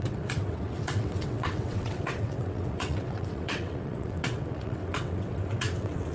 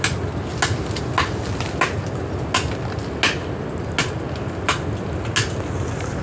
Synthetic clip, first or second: first